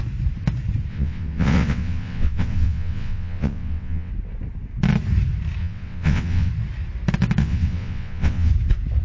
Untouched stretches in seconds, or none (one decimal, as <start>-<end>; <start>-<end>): 0.0-0.9; 4.1-5.6; 6.5-7.4; 8.5-9.0